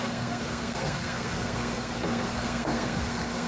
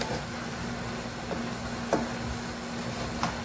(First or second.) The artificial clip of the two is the first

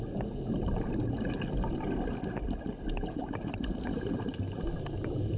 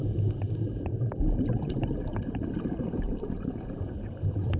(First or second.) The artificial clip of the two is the second